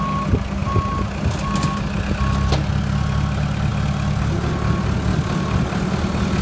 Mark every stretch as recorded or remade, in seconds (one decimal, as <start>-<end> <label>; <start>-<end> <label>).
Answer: 0.0-6.4 recorded